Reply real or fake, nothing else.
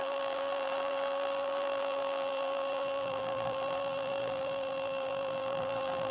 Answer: fake